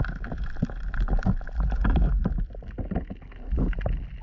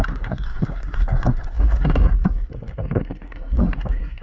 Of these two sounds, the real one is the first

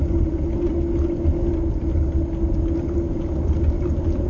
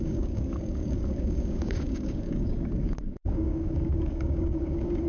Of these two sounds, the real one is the first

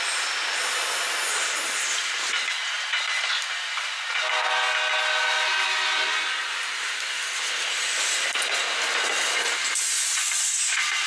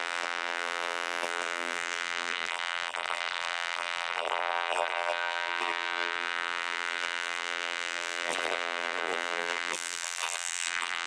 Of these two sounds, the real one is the first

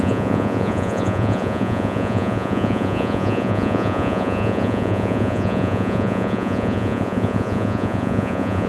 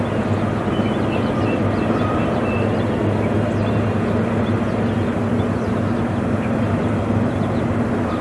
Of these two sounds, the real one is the second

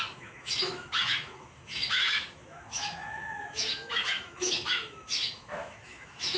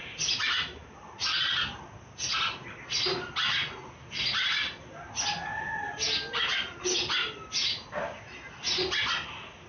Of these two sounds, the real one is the second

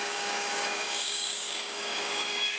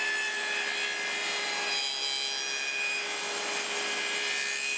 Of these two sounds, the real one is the second